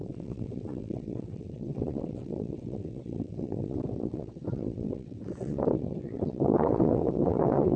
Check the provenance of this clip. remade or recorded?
remade